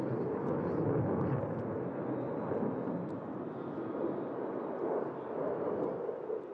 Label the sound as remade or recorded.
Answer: recorded